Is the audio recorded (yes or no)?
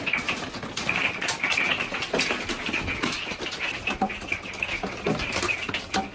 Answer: yes